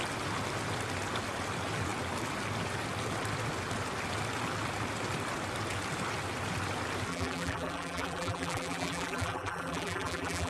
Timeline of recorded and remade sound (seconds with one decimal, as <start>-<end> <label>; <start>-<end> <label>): 0.0-7.1 recorded; 7.1-10.5 remade